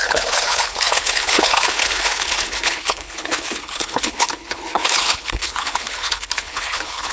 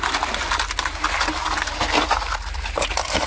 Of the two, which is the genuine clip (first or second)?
second